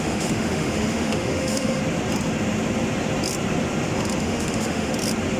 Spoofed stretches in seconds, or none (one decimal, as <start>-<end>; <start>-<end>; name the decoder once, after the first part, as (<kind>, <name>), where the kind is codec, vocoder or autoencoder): 0.0-1.8 (autoencoder, DAC-VAE); 4.2-4.9